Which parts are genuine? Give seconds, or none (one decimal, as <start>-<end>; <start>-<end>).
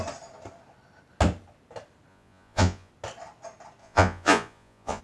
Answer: 0.0-2.1; 2.9-3.8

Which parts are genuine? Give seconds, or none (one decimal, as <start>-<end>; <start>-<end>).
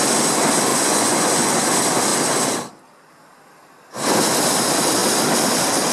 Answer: 0.0-0.7; 1.5-5.9